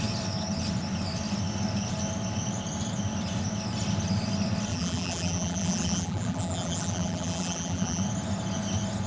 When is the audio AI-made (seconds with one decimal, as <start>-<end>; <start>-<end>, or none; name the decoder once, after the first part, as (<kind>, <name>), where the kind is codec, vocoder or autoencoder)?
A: 4.7-8.0 (vocoder, BigVGAN v2)